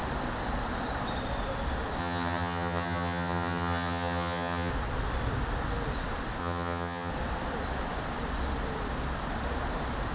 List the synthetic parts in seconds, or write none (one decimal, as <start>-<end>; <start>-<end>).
2.0-4.7; 6.4-7.1

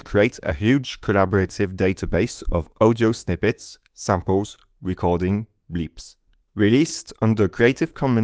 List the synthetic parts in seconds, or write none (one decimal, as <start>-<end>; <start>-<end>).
0.0-4.6; 6.0-6.9; 7.6-8.2